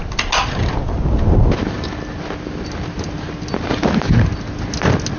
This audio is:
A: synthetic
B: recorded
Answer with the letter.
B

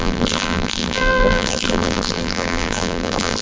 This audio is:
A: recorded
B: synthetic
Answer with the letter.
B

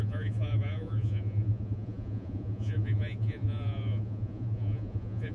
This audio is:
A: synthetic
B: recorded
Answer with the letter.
A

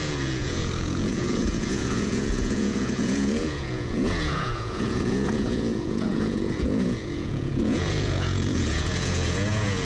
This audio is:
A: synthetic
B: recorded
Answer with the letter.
A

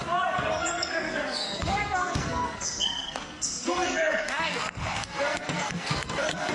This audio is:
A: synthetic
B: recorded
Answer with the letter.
A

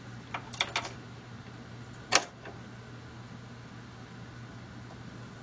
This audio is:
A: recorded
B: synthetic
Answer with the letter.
A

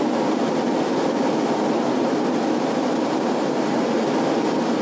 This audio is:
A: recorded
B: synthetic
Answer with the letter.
A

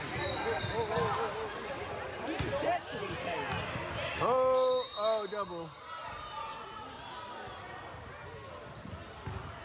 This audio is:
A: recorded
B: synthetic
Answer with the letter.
A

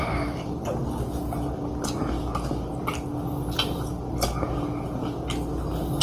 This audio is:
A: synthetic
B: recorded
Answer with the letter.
B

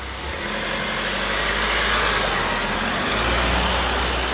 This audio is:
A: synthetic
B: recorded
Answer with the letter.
B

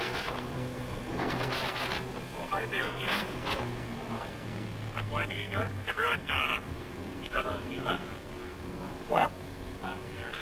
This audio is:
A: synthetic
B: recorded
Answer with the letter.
A